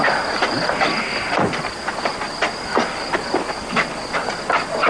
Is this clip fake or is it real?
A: real